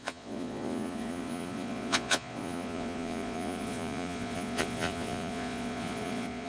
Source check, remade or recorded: remade